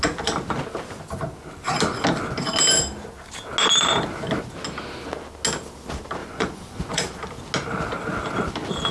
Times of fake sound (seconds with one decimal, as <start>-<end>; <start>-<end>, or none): 6.2-7.0